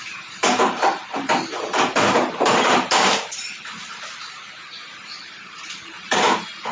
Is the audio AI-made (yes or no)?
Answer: yes